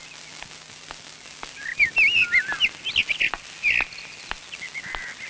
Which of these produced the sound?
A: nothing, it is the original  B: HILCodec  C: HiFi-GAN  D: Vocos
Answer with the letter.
A